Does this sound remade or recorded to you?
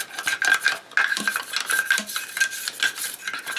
recorded